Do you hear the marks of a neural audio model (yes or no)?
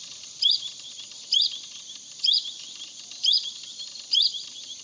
yes